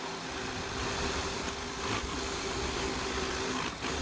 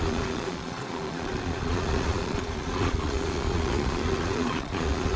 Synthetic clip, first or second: second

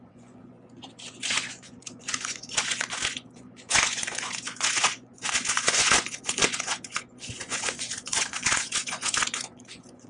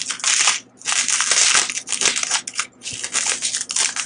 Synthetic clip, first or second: first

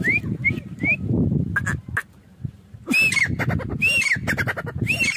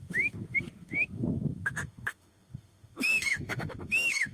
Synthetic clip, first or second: second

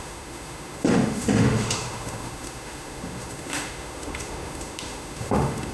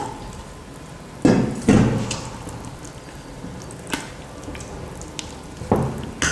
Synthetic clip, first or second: first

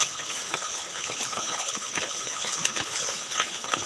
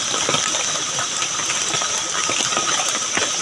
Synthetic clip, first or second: first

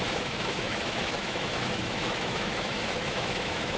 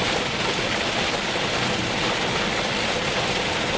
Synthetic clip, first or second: first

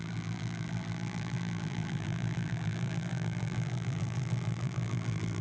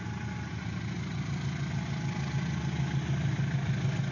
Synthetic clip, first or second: first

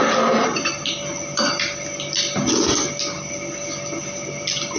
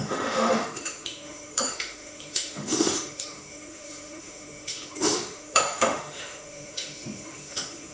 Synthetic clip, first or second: second